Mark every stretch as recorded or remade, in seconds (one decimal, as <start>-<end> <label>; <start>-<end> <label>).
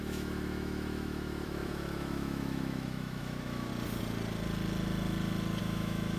0.0-3.7 remade; 3.7-5.6 recorded; 5.6-6.2 remade